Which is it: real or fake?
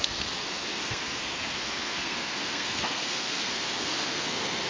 fake